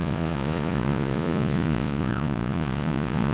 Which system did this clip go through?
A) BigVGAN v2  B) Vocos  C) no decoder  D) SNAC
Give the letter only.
B